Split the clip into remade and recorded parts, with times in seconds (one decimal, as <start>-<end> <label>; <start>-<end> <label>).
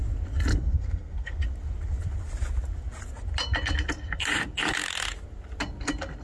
0.0-0.5 recorded; 0.5-1.4 remade; 1.4-6.2 recorded